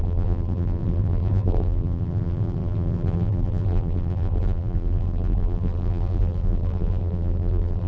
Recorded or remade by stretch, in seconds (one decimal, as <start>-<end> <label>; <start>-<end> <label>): 0.0-7.9 remade